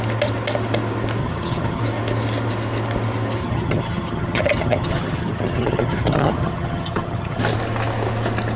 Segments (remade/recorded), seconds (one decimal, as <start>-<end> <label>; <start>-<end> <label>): 0.0-1.2 recorded; 1.2-1.8 remade; 1.8-3.4 recorded; 3.4-7.4 remade; 7.4-8.6 recorded